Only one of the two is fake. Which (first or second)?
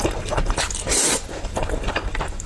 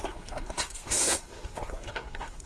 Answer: second